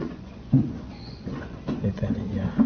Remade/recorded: remade